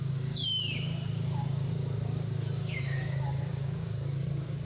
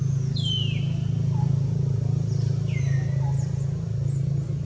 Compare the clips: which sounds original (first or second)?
second